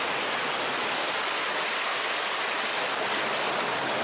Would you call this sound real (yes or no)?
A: yes